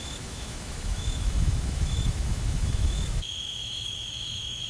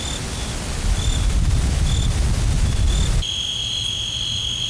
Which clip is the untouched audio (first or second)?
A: second